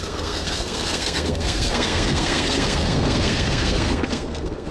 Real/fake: fake